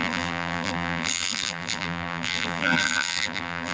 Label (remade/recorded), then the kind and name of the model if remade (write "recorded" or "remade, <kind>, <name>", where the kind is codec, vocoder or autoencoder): remade, vocoder, BigVGAN v2